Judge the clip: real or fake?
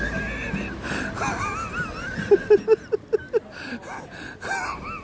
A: real